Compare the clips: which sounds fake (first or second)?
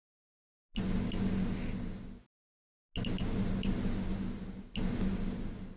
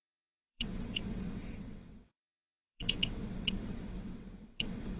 second